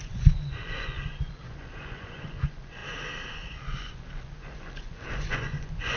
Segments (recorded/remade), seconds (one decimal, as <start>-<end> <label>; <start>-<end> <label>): 0.0-2.8 remade; 2.8-3.3 recorded; 3.3-6.0 remade